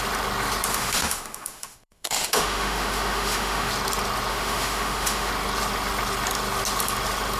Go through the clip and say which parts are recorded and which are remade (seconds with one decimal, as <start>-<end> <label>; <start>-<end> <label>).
0.0-0.7 recorded; 0.7-3.7 remade; 3.7-4.3 recorded; 4.3-5.3 remade; 5.3-7.4 recorded